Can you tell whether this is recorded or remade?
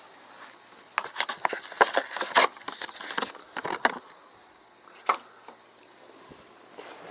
recorded